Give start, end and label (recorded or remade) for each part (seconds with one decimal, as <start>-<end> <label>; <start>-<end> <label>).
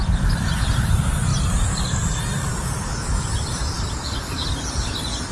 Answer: 0.0-1.3 recorded; 1.3-4.5 remade; 4.5-5.3 recorded